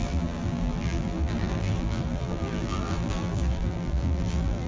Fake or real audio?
fake